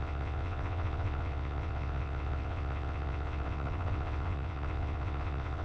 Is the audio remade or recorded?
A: remade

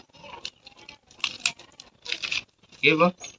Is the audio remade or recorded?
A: recorded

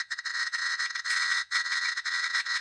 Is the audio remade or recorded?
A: remade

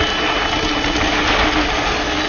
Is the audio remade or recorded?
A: recorded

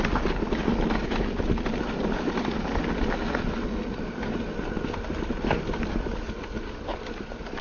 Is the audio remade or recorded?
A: recorded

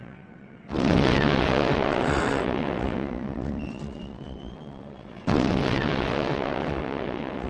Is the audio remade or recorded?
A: remade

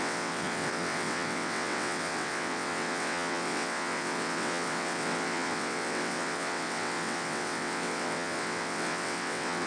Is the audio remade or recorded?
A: remade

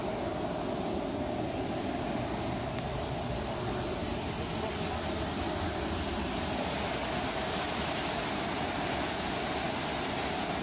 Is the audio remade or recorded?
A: recorded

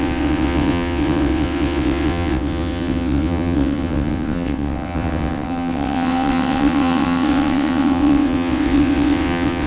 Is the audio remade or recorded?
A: remade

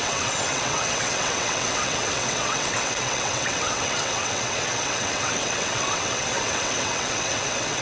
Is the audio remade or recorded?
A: remade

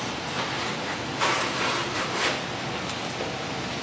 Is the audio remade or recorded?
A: recorded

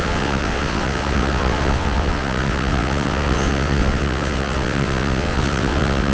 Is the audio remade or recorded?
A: remade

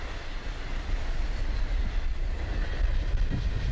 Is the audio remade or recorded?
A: recorded